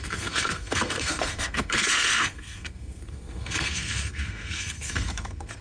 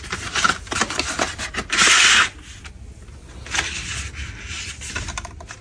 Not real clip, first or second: first